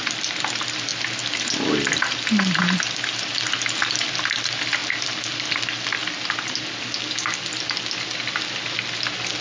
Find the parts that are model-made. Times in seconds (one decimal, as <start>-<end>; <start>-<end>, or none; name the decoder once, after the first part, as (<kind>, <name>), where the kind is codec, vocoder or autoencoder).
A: none